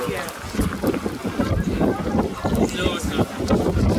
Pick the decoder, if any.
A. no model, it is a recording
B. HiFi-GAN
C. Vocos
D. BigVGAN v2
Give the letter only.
A